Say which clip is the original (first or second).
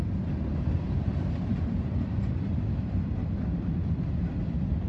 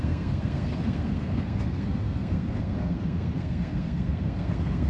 first